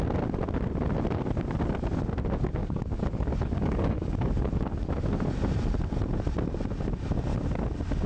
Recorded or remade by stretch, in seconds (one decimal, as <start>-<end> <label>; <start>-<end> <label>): 0.0-2.6 recorded; 2.6-4.9 remade; 4.9-8.1 recorded